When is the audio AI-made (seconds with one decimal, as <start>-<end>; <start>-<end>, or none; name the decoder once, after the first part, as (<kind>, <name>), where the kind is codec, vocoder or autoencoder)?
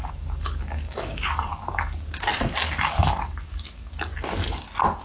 0.0-2.3 (codec, DAC); 3.0-4.1